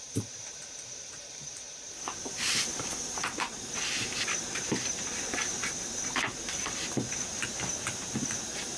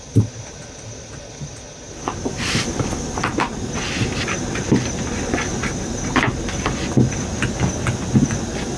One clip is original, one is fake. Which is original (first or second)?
second